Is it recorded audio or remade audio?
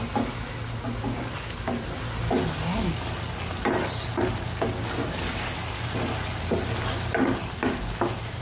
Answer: recorded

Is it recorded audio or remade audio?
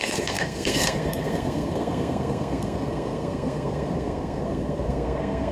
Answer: remade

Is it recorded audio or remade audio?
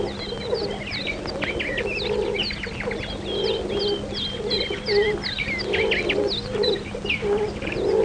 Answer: recorded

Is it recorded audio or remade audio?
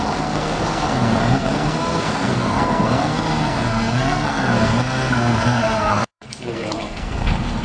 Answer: remade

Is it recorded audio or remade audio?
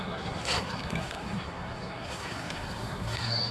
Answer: remade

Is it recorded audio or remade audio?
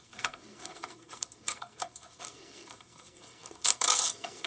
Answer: remade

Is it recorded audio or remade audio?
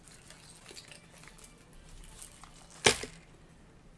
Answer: recorded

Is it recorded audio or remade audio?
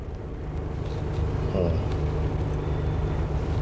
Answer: recorded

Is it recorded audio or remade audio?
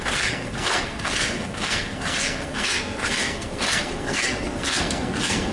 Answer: remade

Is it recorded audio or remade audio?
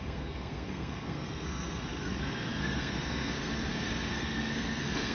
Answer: remade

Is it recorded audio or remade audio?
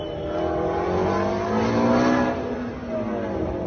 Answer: recorded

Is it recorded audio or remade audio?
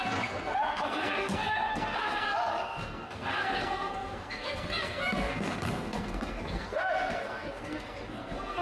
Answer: remade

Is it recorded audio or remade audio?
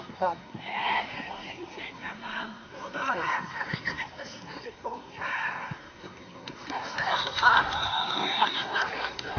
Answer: remade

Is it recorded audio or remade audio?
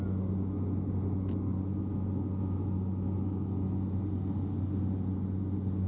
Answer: recorded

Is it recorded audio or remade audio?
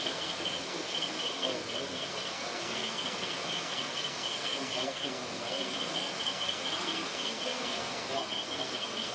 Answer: remade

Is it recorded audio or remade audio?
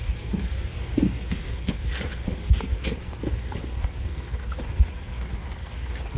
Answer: remade